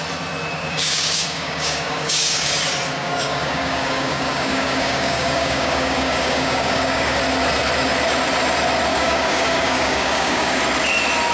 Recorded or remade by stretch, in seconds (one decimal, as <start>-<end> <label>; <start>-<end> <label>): 0.0-0.5 recorded; 0.5-2.6 remade; 2.6-3.0 recorded; 3.0-7.2 remade; 7.2-8.9 recorded; 8.9-10.6 remade; 10.6-11.3 recorded